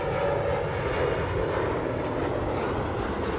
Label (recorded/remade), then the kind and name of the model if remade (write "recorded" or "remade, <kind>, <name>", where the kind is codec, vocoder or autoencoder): recorded